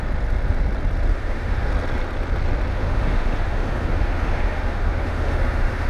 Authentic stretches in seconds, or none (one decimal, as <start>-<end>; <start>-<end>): 0.0-1.1; 1.7-2.7